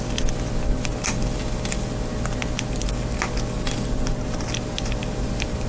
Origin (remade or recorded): recorded